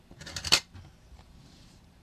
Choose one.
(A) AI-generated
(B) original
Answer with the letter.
A